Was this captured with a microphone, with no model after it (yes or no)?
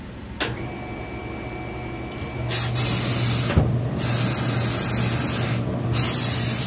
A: yes